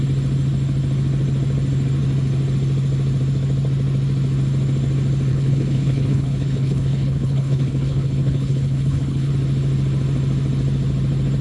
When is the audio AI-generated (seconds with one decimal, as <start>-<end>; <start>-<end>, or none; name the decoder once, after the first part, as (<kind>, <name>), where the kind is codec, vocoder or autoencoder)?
5.3-9.3 (codec, HILCodec)